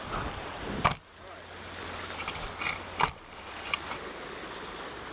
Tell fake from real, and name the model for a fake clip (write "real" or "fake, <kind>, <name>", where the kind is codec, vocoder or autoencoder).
real